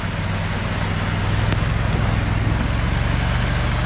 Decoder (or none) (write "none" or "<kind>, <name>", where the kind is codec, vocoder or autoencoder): none